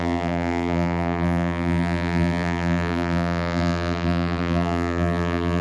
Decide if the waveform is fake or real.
fake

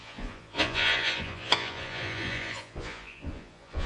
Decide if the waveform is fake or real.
fake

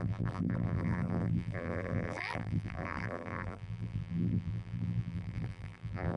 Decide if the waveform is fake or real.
fake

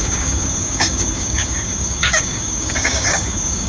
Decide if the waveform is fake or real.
fake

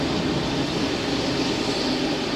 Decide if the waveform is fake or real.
real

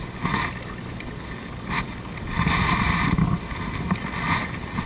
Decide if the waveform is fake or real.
real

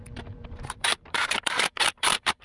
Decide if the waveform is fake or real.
fake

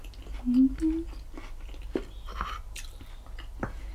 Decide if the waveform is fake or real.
real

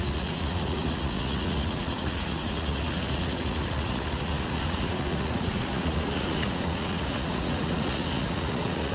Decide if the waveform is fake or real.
fake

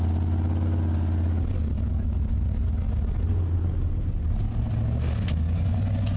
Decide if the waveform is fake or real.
real